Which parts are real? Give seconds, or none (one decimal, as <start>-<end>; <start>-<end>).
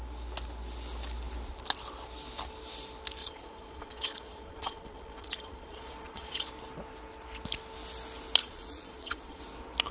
0.0-3.2; 6.5-8.4; 9.4-9.9